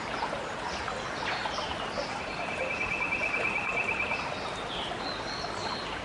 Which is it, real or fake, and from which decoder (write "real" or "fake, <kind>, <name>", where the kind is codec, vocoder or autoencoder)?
real